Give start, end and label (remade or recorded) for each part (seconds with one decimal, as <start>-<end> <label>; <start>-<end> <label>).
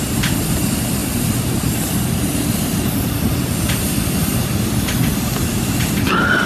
0.0-6.5 recorded